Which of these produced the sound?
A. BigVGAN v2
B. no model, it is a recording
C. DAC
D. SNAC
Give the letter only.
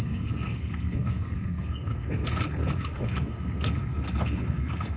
D